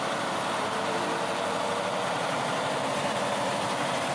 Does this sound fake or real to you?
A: fake